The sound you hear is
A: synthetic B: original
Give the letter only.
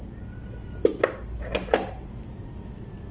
B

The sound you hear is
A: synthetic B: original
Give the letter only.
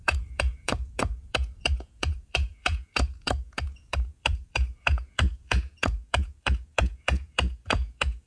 A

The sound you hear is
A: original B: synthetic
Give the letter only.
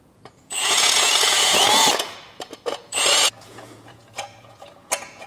B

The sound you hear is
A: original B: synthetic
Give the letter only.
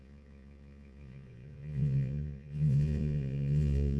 B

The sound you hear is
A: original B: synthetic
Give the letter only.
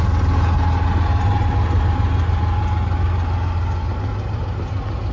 A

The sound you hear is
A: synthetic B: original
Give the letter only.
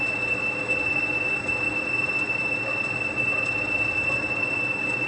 A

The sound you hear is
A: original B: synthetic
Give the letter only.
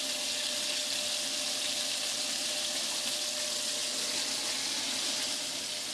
A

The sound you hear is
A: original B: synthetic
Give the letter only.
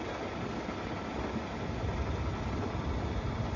A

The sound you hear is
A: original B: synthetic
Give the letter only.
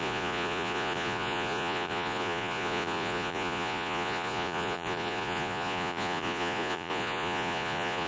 B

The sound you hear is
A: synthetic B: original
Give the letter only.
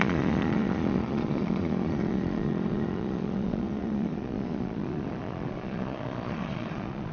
A